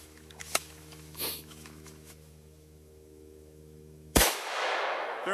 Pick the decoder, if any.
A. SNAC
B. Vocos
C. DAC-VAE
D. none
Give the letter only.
C